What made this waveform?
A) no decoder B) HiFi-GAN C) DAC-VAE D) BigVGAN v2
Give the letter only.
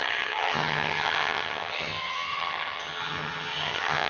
B